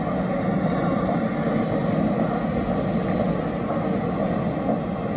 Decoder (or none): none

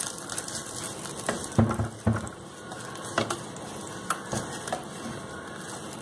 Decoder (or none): none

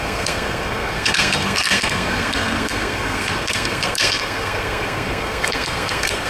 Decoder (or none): codec, SNAC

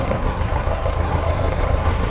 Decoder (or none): codec, SNAC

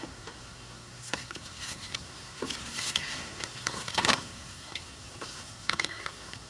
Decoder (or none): codec, SNAC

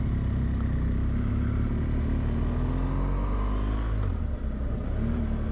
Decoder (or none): none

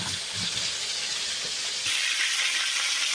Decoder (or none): none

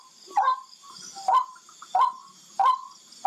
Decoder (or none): none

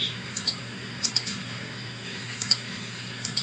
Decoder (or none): codec, SNAC